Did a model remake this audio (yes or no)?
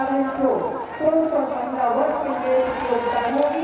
no